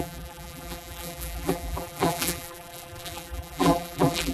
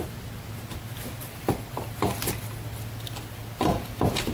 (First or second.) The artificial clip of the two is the first